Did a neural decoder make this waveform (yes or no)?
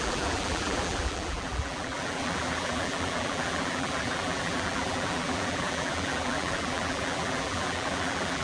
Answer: yes